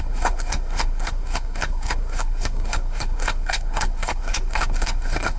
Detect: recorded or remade remade